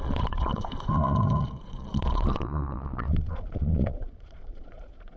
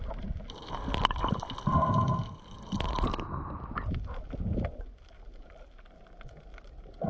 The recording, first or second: second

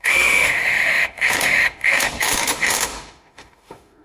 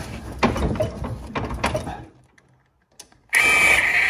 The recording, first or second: second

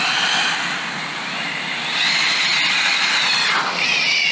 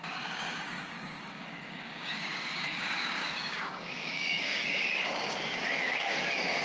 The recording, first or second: first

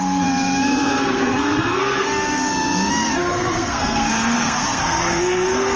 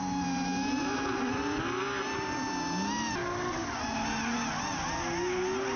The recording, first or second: second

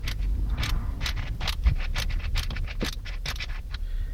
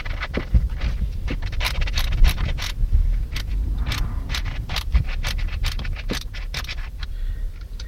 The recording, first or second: first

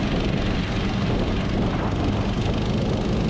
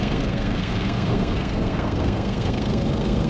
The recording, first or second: first